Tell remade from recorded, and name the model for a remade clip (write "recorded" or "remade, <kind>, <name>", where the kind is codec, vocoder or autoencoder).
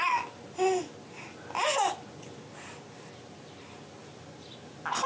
recorded